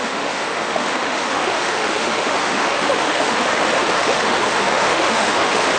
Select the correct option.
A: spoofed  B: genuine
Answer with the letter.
A